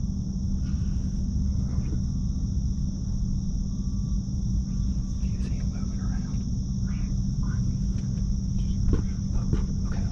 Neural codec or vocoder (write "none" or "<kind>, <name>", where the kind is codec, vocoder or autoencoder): none